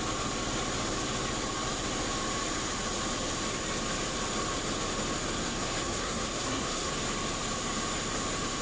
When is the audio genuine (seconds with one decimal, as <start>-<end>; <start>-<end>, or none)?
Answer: 0.0-5.4; 6.9-8.6